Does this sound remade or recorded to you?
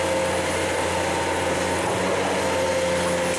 recorded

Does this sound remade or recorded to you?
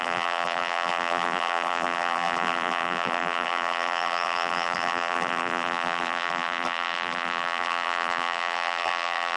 remade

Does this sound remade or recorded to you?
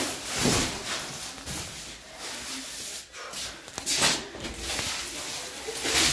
recorded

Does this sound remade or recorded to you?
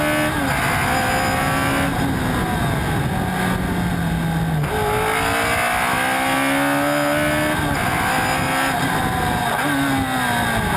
recorded